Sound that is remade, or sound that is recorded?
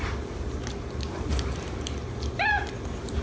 recorded